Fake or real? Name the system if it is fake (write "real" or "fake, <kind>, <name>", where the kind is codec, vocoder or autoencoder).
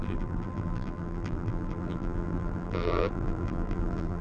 fake, vocoder, BigVGAN v2